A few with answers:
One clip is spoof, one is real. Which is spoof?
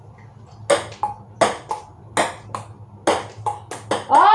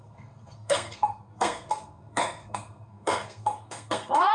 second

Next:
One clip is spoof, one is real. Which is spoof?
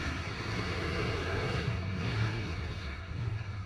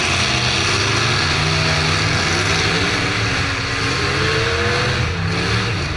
first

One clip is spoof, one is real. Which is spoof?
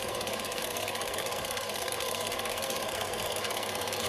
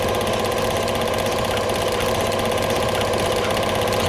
first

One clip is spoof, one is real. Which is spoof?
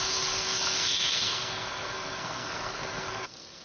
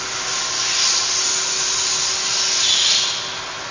first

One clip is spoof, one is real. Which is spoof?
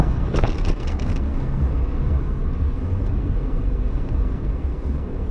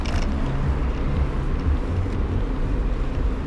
first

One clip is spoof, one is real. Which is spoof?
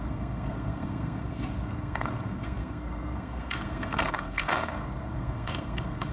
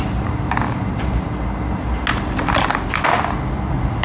first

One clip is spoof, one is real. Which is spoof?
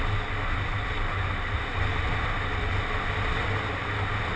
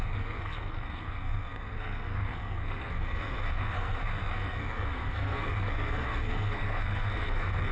second